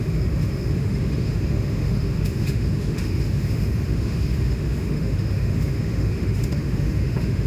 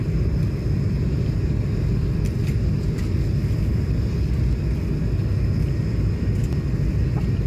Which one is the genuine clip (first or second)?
second